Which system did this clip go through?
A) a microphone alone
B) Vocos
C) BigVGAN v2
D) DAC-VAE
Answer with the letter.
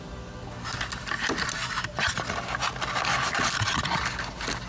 A